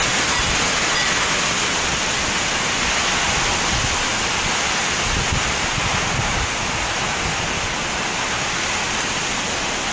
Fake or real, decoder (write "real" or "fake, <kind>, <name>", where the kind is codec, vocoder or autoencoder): real